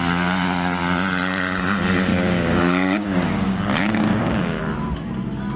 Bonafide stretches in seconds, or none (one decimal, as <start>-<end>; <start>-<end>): 0.0-2.1; 4.6-5.6